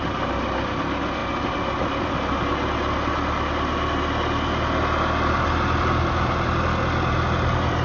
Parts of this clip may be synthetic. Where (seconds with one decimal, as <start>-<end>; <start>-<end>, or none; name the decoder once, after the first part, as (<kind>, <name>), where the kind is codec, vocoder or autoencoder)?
none